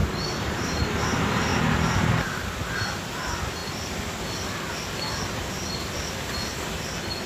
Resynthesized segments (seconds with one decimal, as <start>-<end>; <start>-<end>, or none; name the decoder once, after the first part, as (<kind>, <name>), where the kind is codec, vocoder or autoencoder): 0.0-1.5 (vocoder, BigVGAN v2); 3.1-3.6